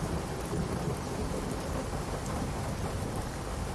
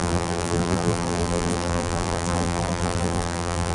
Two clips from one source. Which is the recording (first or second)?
first